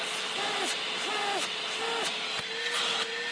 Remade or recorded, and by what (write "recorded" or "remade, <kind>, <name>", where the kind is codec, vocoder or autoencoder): recorded